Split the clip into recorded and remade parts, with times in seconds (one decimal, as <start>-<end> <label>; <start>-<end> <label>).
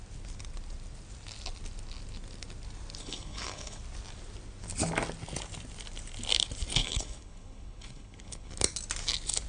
0.0-3.0 recorded; 3.0-3.8 remade; 3.8-6.8 recorded; 6.8-8.5 remade; 8.5-9.5 recorded